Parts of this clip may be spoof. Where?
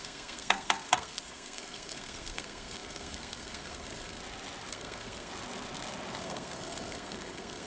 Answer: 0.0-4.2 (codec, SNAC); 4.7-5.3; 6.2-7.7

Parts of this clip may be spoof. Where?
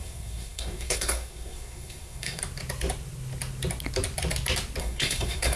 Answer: 0.0-2.4 (codec, SNAC); 4.8-5.6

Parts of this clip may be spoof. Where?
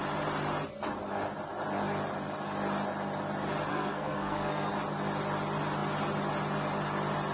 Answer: 3.7-4.7 (codec, SNAC)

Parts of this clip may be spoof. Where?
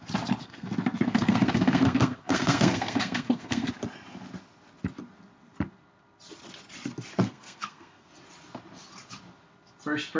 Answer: 0.4-3.7 (codec, SNAC); 7.1-8.1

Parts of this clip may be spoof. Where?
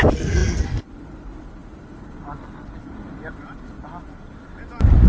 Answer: none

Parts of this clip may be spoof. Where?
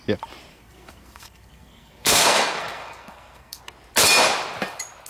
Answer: 0.5-3.6 (codec, SNAC)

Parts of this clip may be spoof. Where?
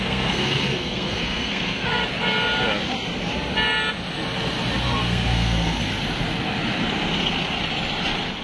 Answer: 0.0-2.0 (codec, SNAC); 4.8-5.9